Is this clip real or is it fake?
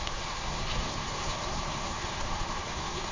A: fake